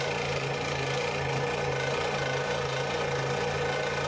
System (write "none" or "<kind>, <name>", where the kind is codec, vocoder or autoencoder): none